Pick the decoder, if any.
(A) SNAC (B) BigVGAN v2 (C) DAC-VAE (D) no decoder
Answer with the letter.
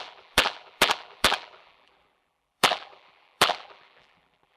B